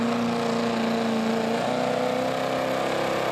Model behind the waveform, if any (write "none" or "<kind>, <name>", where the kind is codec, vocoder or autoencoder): none